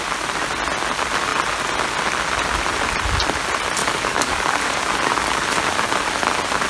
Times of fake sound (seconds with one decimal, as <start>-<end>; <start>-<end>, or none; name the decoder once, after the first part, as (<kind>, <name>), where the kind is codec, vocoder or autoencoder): 3.8-4.9 (codec, DAC)